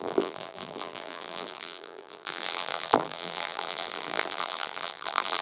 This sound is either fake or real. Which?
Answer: fake